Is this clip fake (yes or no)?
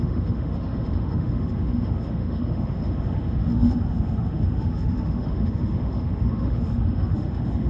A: yes